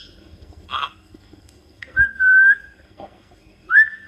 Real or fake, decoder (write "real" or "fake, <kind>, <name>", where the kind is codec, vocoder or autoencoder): fake, codec, SNAC